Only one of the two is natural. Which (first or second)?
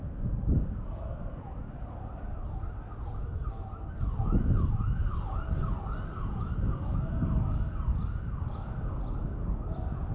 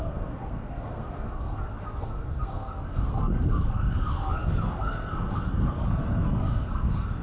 first